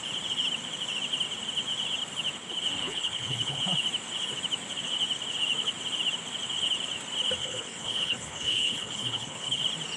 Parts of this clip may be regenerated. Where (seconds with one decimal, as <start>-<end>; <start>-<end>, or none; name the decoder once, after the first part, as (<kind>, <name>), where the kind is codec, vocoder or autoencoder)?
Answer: 2.8-3.6 (codec, HILCodec); 7.4-9.6